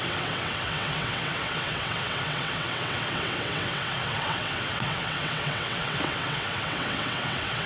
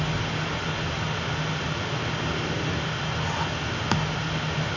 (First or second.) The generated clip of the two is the first